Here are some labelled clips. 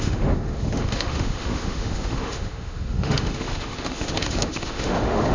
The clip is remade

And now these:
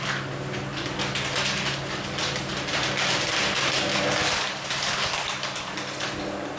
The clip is recorded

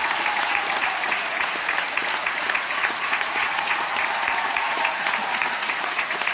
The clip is remade